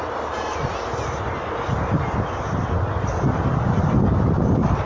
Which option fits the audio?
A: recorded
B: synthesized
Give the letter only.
A